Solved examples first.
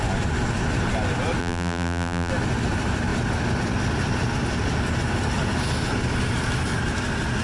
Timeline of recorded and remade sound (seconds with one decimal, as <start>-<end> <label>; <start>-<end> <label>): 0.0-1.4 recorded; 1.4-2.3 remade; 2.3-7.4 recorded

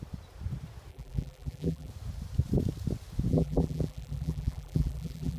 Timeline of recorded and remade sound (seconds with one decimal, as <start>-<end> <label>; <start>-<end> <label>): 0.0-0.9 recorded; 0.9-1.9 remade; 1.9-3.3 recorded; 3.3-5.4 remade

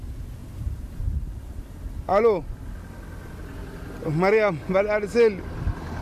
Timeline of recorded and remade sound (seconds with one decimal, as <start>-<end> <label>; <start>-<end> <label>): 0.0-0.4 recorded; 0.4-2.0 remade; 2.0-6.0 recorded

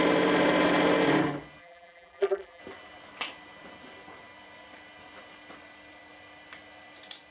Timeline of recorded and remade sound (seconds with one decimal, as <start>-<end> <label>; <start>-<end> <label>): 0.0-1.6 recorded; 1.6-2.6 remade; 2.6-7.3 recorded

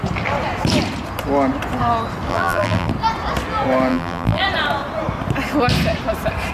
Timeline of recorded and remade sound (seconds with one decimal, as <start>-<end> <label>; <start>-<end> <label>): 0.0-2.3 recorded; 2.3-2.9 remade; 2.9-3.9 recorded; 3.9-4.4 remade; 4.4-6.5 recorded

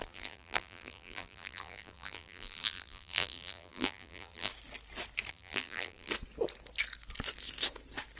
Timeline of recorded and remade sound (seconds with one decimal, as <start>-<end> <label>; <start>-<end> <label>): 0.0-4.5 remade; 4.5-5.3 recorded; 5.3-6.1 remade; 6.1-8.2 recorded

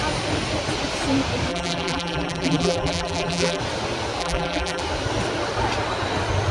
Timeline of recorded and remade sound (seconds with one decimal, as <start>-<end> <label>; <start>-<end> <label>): 0.0-1.5 recorded; 1.5-3.6 remade; 3.6-4.2 recorded; 4.2-4.8 remade; 4.8-6.5 recorded

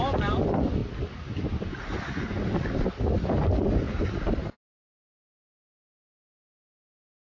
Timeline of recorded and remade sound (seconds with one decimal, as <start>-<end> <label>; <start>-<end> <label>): 0.0-7.4 recorded